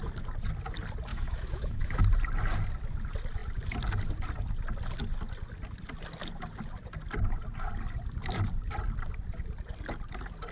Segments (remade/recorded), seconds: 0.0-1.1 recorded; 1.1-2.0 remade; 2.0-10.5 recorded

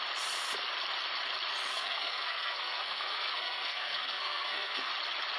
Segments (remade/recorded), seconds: 0.0-1.7 recorded; 1.7-4.9 remade; 4.9-5.4 recorded

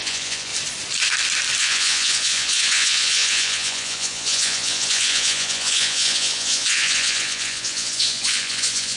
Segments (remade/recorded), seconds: 0.0-0.5 remade; 0.5-1.6 recorded; 1.6-9.0 remade

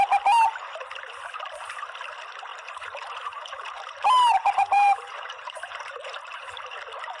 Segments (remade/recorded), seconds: 0.0-2.5 recorded; 2.5-6.8 remade; 6.8-7.2 recorded

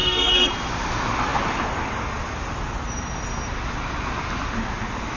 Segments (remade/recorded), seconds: 0.0-0.5 remade; 0.5-5.2 recorded

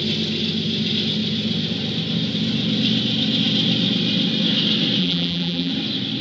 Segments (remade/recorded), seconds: 0.0-5.0 recorded; 5.0-5.7 remade; 5.7-6.2 recorded

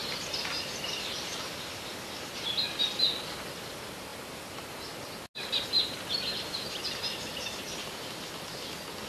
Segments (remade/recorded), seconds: 0.0-1.3 recorded; 1.3-1.9 remade; 1.9-9.1 recorded